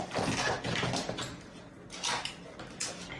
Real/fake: real